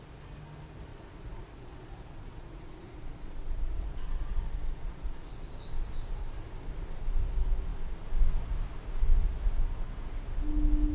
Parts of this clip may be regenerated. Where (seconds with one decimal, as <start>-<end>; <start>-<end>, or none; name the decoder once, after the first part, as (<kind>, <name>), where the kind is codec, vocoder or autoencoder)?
0.9-5.6 (vocoder, Vocos)